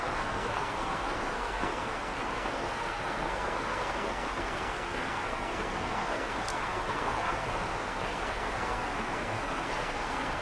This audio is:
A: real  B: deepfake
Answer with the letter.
B